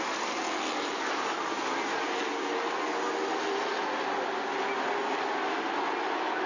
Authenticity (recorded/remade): recorded